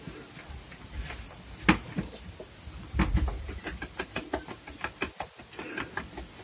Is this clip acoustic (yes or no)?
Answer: yes